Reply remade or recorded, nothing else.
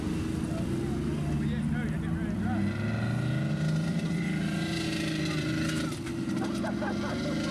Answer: recorded